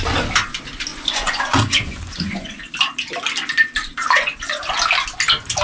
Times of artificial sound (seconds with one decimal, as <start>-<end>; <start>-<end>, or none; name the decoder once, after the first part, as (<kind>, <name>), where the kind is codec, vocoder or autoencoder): 0.9-2.6 (vocoder, Vocos); 4.0-4.6